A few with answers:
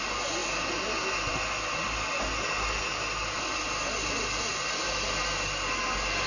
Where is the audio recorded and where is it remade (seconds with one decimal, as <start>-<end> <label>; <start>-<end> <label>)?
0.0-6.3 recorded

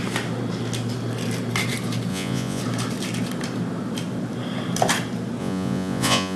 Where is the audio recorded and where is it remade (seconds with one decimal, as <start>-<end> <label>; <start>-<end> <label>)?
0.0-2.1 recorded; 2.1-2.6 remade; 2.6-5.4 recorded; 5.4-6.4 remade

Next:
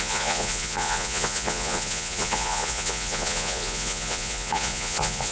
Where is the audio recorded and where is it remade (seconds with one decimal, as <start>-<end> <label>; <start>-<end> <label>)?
0.0-5.3 remade

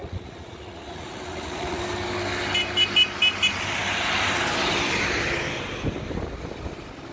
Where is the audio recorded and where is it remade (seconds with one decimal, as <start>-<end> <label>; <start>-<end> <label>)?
0.0-1.8 remade; 1.8-7.1 recorded

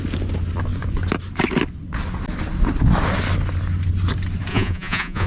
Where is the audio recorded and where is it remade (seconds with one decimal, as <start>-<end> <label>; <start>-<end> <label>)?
0.0-4.5 recorded; 4.5-5.3 remade

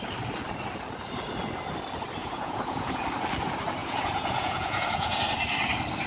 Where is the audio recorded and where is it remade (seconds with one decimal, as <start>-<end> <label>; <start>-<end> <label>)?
0.0-2.2 recorded; 2.2-3.0 remade; 3.0-3.8 recorded; 3.8-5.2 remade; 5.2-6.1 recorded

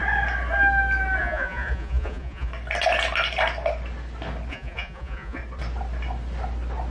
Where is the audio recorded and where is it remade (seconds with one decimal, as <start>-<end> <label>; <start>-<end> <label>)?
0.0-1.2 recorded; 1.2-2.5 remade; 2.5-4.5 recorded; 4.5-5.4 remade; 5.4-6.9 recorded

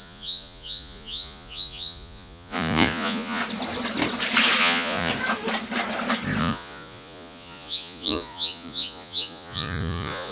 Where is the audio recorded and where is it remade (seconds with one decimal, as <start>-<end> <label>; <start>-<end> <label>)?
0.0-3.4 remade; 3.4-4.6 recorded; 4.6-5.1 remade; 5.1-6.4 recorded; 6.4-10.3 remade